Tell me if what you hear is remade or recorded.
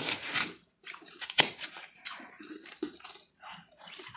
remade